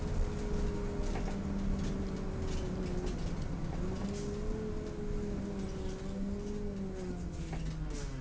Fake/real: real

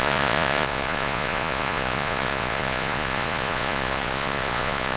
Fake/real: fake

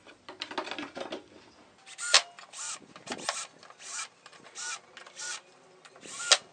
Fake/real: real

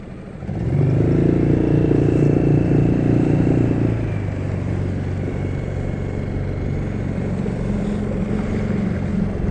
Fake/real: real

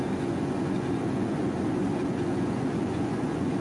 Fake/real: fake